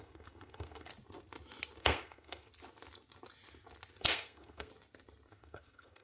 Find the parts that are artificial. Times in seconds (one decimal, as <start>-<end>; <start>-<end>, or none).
0.0-0.9; 1.8-2.5; 4.0-4.7; 5.3-6.0